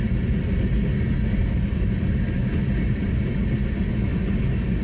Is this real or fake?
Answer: real